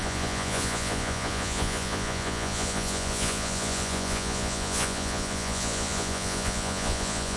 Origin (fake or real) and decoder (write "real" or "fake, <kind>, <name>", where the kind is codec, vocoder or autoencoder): fake, vocoder, Vocos